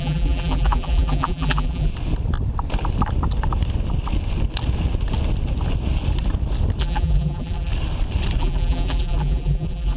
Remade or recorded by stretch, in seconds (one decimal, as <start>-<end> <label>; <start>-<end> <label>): 0.0-1.9 remade; 1.9-6.8 recorded; 6.8-7.7 remade; 7.7-8.4 recorded; 8.4-10.0 remade

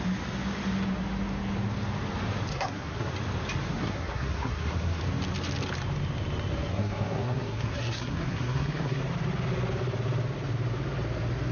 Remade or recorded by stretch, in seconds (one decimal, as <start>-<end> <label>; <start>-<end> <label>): 0.0-2.5 recorded; 2.5-3.1 remade; 3.1-3.7 recorded; 3.7-5.0 remade; 5.0-6.7 recorded; 6.7-9.0 remade; 9.0-11.5 recorded